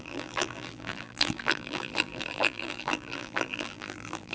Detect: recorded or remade remade